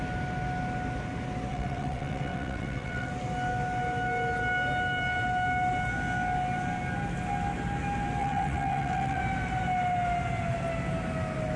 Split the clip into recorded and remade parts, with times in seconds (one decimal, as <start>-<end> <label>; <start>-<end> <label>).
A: 0.0-1.5 recorded; 1.5-3.1 remade; 3.1-8.2 recorded; 8.2-9.2 remade; 9.2-11.6 recorded